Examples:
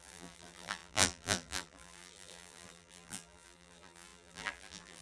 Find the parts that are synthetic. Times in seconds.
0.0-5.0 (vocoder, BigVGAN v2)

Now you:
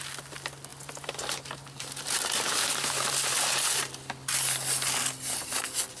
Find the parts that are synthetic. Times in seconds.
0.7-3.3 (vocoder, BigVGAN v2)

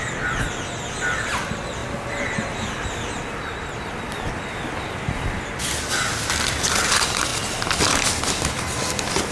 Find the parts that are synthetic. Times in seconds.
none

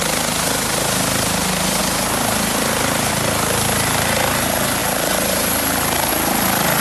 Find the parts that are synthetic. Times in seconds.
1.8-3.1 (vocoder, BigVGAN v2)

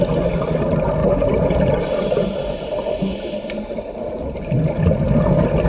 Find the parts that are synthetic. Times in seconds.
1.0-4.4 (vocoder, BigVGAN v2)